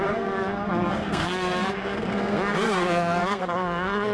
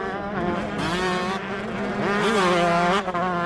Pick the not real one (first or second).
first